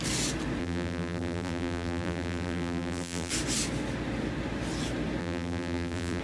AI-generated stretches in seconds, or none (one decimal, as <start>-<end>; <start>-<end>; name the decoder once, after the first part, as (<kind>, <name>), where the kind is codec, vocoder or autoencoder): 0.6-3.3 (vocoder, BigVGAN v2); 5.2-6.2